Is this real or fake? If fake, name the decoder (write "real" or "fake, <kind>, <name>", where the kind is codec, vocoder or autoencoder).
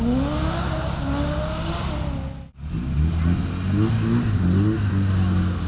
real